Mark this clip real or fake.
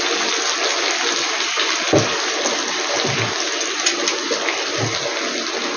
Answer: real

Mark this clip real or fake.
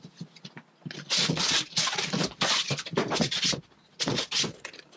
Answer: real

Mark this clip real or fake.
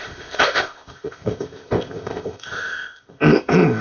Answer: fake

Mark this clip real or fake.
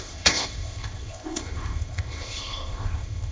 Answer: fake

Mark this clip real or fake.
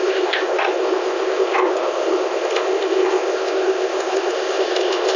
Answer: fake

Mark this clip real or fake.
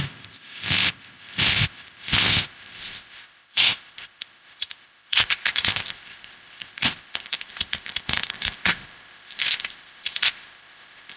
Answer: fake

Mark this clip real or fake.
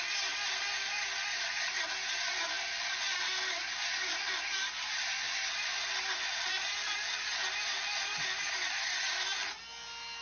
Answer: real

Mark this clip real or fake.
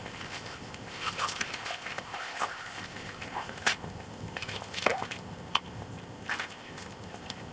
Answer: fake